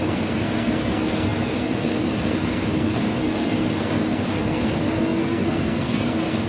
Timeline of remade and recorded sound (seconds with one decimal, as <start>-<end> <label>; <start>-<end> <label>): 0.0-6.5 remade